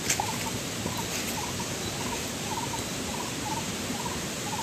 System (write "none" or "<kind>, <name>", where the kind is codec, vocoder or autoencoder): none